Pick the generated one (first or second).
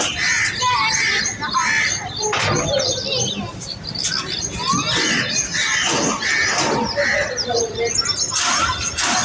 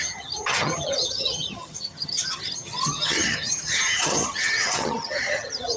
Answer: second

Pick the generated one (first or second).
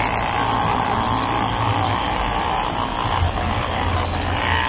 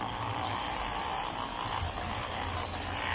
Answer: second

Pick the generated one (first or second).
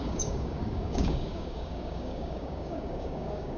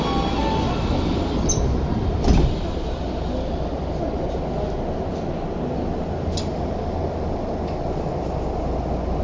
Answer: first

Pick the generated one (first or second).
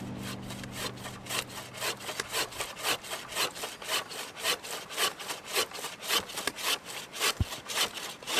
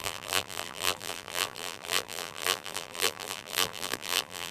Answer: second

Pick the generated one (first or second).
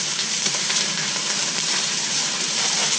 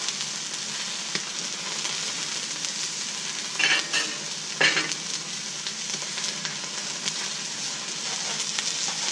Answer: first